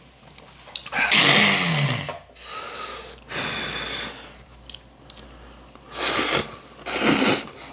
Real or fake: real